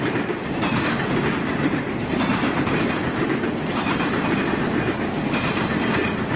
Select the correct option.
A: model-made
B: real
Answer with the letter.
A